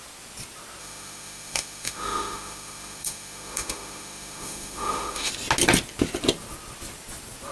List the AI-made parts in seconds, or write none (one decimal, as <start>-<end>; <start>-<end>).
0.8-5.3